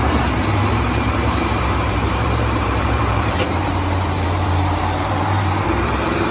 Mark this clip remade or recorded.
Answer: remade